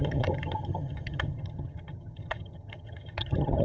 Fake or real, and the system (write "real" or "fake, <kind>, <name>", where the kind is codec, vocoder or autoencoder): fake, vocoder, HiFi-GAN